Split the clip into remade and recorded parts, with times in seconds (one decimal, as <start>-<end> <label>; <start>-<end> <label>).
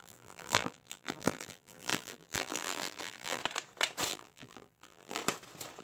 0.0-3.4 remade; 3.4-4.1 recorded; 4.1-5.2 remade; 5.2-5.8 recorded